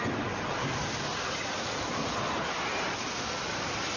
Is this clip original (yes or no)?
yes